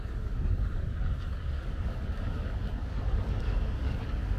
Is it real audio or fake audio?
fake